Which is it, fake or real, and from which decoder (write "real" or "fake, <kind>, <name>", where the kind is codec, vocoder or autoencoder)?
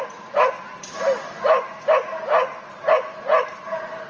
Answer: real